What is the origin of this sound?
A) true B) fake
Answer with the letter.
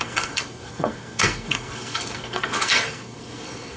B